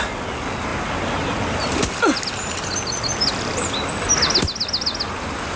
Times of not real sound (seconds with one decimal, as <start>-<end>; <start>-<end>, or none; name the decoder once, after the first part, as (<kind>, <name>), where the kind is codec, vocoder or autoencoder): none